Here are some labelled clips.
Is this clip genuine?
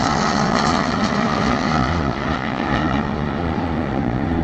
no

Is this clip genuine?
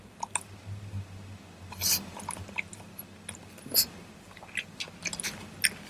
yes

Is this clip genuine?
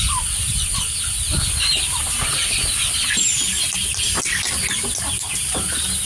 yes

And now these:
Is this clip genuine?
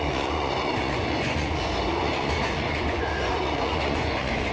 no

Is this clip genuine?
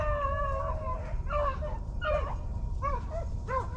yes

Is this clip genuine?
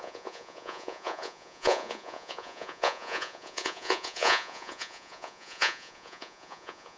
no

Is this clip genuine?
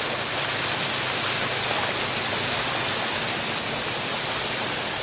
yes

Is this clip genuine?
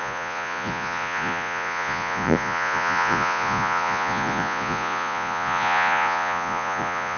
no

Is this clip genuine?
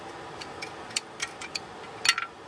yes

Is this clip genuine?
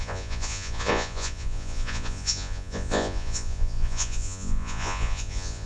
no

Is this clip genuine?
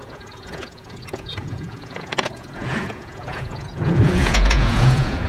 no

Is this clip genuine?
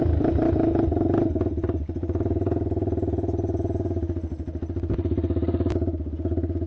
yes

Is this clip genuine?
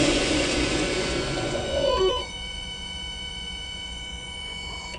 no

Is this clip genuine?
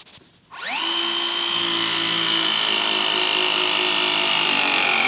yes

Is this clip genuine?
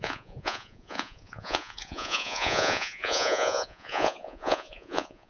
no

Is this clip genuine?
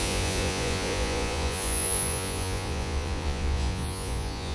no